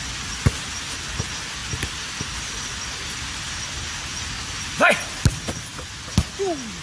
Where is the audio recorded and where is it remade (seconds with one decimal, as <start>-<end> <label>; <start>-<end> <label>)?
0.0-6.8 recorded